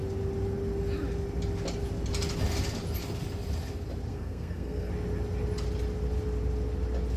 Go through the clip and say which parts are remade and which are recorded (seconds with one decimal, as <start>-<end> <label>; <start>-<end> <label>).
0.0-4.1 recorded; 4.1-4.9 remade; 4.9-7.2 recorded